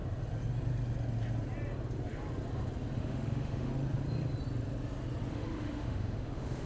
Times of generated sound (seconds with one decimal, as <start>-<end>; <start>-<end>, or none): 3.0-3.7; 5.3-6.7